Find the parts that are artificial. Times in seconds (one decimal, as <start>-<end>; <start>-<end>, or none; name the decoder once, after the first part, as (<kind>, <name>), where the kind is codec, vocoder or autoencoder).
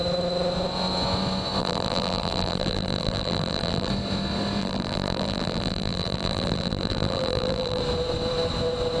1.6-3.9 (vocoder, BigVGAN v2); 4.6-7.8